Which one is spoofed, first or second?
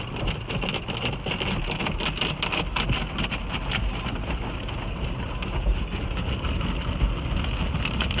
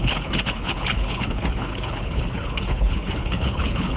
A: second